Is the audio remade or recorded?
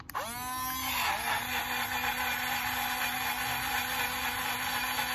recorded